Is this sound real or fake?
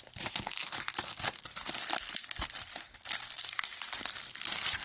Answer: real